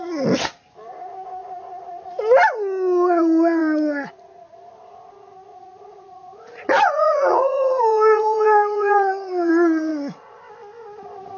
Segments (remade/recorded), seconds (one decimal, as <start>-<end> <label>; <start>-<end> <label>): 0.0-5.5 recorded; 5.5-9.5 remade; 9.5-9.9 recorded; 9.9-10.4 remade; 10.4-11.4 recorded